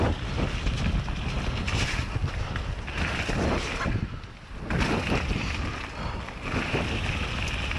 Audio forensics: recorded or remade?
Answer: recorded